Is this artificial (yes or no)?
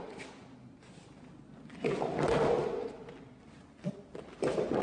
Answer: no